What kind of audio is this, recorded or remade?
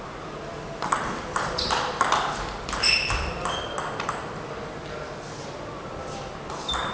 recorded